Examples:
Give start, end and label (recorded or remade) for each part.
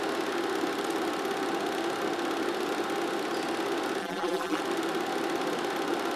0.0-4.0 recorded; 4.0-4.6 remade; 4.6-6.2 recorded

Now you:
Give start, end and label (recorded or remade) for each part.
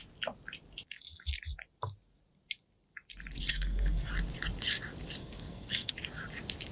0.0-3.5 recorded; 3.5-4.1 remade; 4.1-5.2 recorded; 5.2-5.9 remade; 5.9-6.7 recorded